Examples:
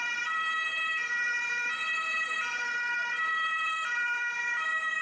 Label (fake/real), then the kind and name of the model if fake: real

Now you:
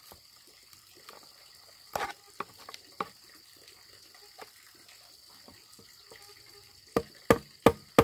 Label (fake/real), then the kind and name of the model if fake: real